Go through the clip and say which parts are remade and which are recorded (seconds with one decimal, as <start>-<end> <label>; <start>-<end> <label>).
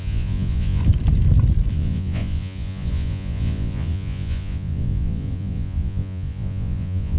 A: 0.0-0.8 remade; 0.8-1.7 recorded; 1.7-7.2 remade